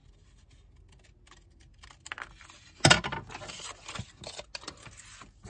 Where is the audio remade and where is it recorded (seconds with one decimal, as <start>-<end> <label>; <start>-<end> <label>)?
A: 0.0-5.5 recorded